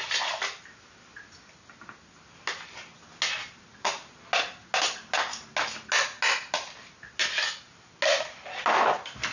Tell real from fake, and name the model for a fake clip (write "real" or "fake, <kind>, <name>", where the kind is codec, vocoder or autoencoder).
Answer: real